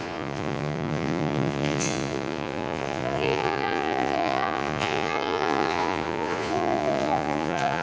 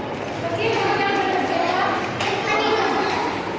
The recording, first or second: second